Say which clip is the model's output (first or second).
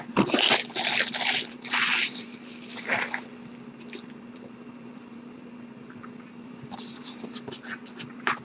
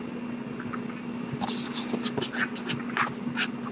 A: first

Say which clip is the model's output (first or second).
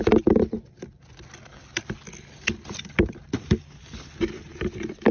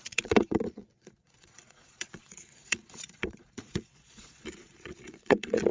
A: second